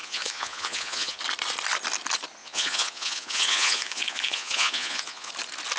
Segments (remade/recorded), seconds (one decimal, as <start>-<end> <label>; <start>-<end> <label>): 0.0-1.2 remade; 1.2-2.4 recorded; 2.4-5.3 remade; 5.3-5.8 recorded